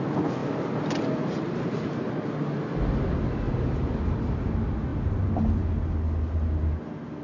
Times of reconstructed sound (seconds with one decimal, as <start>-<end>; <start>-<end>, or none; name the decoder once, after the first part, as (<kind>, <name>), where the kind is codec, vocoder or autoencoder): 0.4-2.1 (vocoder, BigVGAN v2)